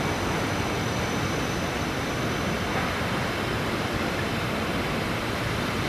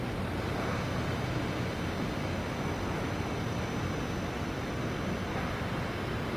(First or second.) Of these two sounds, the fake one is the first